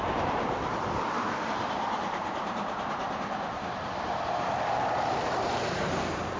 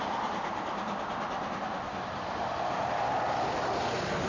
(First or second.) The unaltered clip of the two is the second